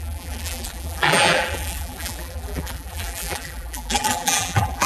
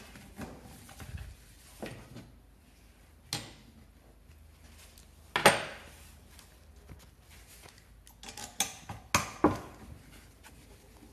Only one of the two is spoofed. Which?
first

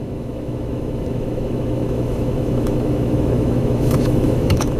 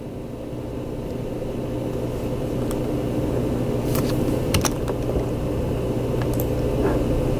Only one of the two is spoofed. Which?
first